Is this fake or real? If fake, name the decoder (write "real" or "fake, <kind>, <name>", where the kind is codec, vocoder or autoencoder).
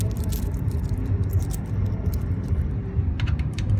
fake, vocoder, BigVGAN v2